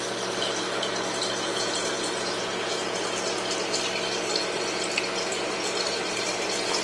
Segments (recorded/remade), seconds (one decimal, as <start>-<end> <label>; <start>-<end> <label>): 0.0-1.5 recorded; 1.5-3.2 remade; 3.2-6.8 recorded

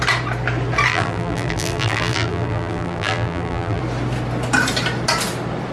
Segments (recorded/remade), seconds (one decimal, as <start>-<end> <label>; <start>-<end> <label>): 0.0-0.9 recorded; 0.9-3.8 remade; 3.8-5.7 recorded

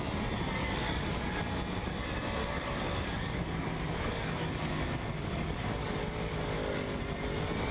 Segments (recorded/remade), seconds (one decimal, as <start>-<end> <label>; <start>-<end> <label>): 0.0-0.6 recorded; 0.6-1.4 remade; 1.4-2.4 recorded; 2.4-7.0 remade; 7.0-7.7 recorded

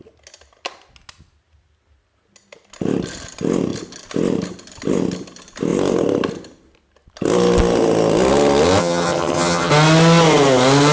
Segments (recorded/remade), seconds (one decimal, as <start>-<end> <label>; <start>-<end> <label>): 0.0-8.8 recorded; 8.8-9.7 remade; 9.7-10.9 recorded

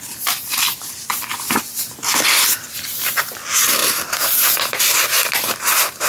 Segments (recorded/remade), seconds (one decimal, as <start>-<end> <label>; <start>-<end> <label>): 0.0-6.1 remade

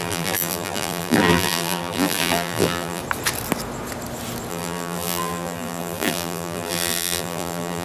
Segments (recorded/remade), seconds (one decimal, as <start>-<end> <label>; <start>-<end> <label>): 0.0-3.0 remade; 3.0-4.5 recorded; 4.5-7.8 remade

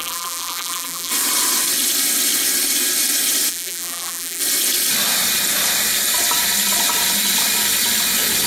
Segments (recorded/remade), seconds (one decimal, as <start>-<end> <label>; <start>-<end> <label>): 0.0-1.1 remade; 1.1-3.5 recorded; 3.5-4.4 remade; 4.4-8.5 recorded